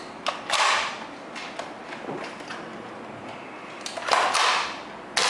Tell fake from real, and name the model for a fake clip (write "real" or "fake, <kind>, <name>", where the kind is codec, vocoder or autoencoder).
real